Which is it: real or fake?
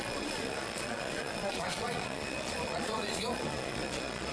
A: fake